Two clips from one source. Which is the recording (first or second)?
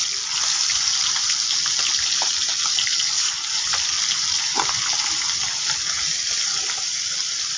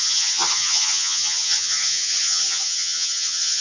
first